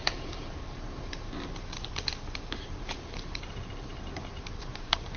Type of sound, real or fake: fake